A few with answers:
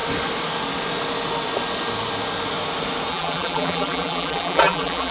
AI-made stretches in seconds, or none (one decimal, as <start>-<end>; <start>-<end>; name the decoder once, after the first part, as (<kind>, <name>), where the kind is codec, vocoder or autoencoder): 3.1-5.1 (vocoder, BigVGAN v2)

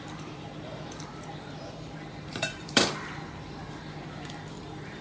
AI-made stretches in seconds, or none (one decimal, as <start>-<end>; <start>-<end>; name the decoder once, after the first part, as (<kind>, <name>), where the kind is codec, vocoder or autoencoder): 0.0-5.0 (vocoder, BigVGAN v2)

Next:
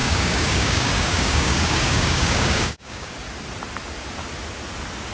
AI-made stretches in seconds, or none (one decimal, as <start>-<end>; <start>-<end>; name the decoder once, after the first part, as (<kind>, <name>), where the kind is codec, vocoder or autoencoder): 0.0-3.1 (codec, DAC)

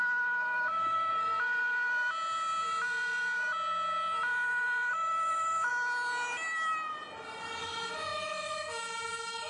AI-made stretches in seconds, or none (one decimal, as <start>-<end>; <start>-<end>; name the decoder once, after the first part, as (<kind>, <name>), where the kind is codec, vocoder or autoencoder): 0.0-1.1 (autoencoder, DAC-VAE); 4.9-5.7; 7.6-9.5

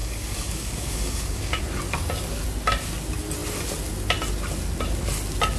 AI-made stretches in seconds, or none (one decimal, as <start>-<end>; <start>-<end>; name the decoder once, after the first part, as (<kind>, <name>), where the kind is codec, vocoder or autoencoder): 0.0-1.6 (codec, DAC)

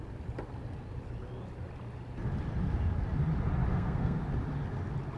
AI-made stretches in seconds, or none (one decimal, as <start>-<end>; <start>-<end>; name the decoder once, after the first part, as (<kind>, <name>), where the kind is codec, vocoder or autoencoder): 3.7-4.2 (codec, SNAC)

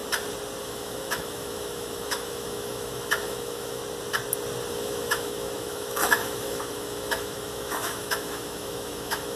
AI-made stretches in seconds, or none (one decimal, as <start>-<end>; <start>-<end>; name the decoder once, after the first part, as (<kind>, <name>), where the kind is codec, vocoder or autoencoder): 0.6-3.8 (autoencoder, DAC-VAE); 4.7-9.4

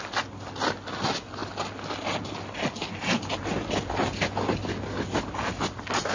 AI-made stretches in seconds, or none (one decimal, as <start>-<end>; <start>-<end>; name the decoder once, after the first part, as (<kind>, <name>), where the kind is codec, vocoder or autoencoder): none